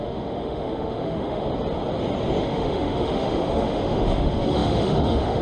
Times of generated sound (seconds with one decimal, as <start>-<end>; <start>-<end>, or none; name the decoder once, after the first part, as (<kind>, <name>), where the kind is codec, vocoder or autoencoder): 0.0-1.5 (autoencoder, DAC-VAE); 2.4-5.4